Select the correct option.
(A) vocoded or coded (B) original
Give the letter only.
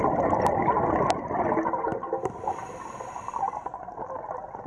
B